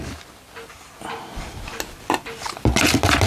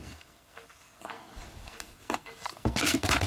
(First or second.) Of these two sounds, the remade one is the second